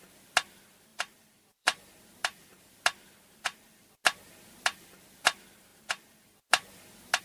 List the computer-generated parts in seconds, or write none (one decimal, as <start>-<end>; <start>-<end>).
0.9-1.9